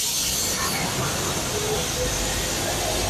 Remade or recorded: recorded